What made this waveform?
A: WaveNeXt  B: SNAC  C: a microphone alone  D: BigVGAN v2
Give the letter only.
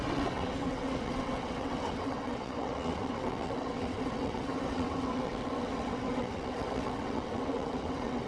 A